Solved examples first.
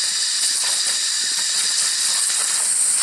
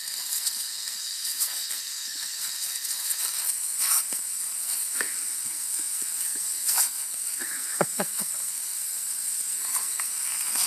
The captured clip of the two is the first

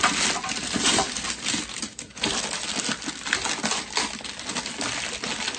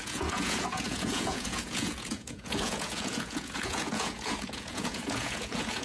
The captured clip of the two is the first